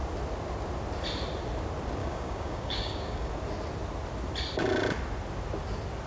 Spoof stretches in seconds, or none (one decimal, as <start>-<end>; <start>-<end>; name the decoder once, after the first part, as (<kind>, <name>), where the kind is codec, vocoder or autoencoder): 2.0-3.3 (codec, DAC)